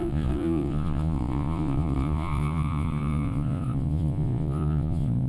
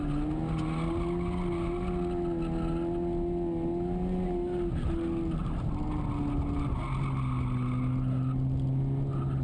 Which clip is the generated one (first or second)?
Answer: first